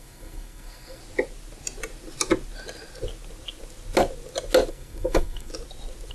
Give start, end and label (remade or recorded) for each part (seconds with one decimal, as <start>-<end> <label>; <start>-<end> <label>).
0.0-1.0 remade; 1.0-4.7 recorded; 4.7-5.5 remade; 5.5-6.1 recorded